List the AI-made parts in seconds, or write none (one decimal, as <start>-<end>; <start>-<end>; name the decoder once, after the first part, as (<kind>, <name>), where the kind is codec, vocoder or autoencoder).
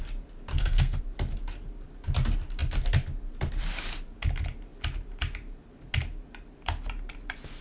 0.5-1.0 (codec, SNAC)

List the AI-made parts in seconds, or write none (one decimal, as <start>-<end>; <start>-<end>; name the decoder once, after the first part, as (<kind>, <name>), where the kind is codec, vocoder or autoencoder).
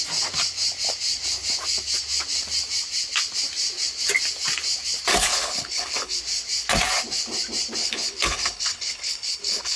5.1-6.2 (codec, HILCodec); 7.8-9.8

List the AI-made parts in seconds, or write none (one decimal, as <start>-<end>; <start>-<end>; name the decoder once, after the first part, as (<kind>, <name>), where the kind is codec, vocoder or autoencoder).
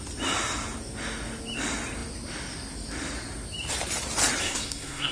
4.4-5.1 (codec, SNAC)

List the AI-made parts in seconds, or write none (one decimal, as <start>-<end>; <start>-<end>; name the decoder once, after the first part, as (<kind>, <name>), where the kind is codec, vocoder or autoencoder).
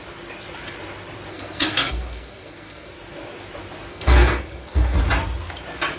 1.3-2.9 (codec, SNAC); 3.9-5.0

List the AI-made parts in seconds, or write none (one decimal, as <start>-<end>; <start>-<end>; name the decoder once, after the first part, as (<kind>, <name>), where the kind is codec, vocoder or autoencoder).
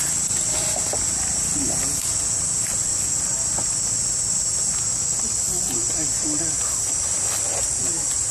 none